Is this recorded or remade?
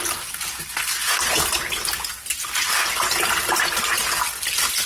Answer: recorded